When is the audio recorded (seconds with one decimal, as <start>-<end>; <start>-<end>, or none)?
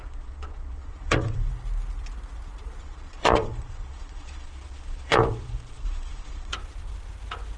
1.5-2.8; 6.5-7.6